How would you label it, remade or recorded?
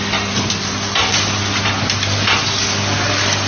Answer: recorded